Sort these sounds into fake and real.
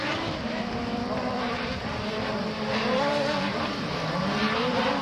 fake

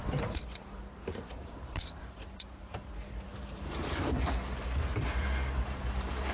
fake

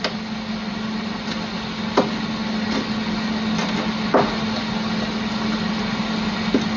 real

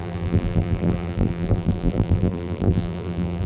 fake